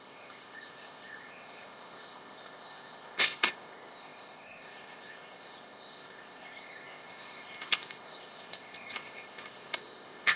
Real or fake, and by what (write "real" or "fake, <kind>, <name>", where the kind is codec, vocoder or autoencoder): fake, codec, ZipCodec